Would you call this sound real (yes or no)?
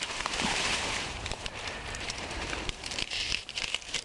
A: no